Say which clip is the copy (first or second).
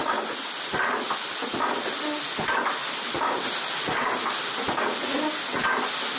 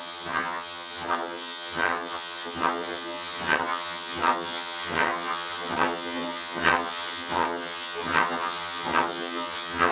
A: second